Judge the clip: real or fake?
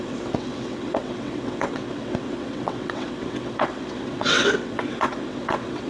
fake